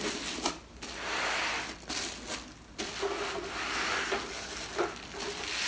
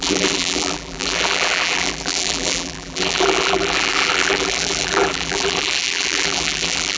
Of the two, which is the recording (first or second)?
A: first